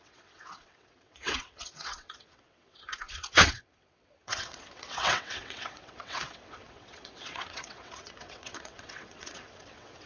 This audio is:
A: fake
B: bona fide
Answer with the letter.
A